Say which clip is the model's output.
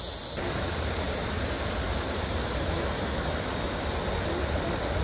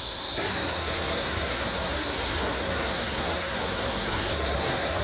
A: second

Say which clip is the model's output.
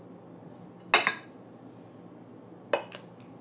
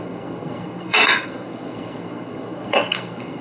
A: second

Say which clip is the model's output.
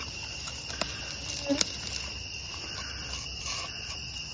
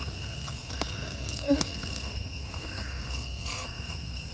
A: second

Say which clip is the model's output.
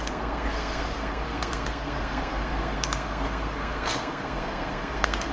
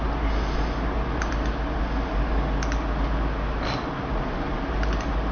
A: first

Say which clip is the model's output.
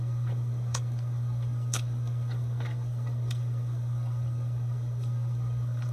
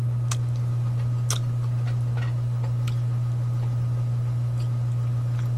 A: first